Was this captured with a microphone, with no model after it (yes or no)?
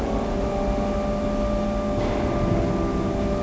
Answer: yes